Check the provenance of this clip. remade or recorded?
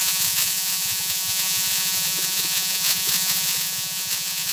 remade